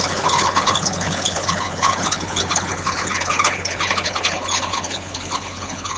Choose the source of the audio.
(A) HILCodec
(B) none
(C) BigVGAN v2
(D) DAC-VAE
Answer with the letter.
A